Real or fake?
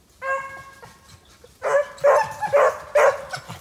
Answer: real